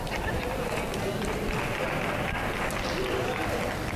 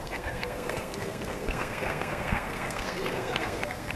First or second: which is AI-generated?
second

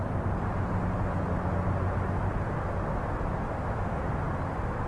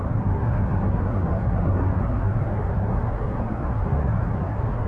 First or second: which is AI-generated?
second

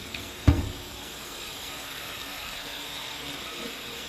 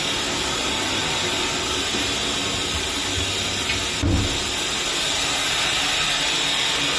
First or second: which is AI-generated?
first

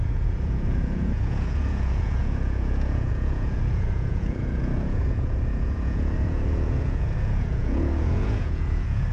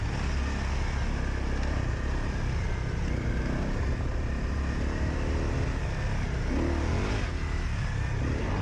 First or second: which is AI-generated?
first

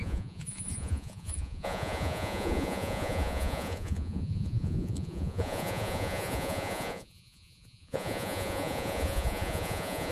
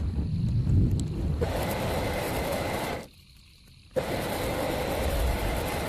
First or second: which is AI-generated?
first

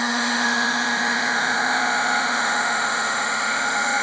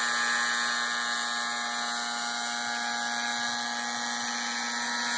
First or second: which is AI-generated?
first